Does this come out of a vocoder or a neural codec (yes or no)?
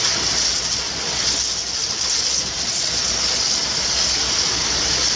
no